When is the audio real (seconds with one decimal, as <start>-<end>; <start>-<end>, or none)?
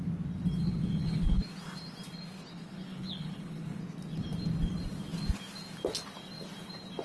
0.0-0.6; 1.4-2.5; 3.8-7.0